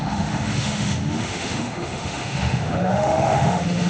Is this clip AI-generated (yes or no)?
yes